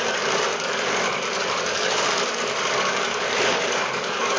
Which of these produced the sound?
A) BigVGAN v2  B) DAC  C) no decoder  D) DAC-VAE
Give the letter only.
B